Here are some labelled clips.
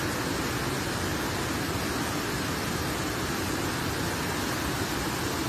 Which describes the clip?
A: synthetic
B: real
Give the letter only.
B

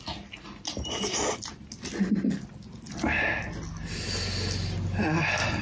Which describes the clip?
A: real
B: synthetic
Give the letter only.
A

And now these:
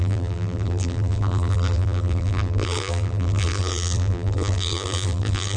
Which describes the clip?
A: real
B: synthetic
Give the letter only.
B